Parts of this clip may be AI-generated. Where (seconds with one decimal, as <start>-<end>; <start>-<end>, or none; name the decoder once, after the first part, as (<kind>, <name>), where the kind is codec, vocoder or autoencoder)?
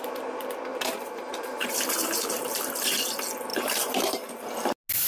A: 0.7-2.6 (vocoder, BigVGAN v2); 3.5-4.3